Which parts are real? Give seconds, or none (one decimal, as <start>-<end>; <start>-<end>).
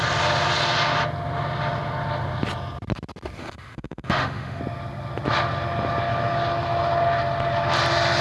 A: 0.0-3.4; 4.6-8.2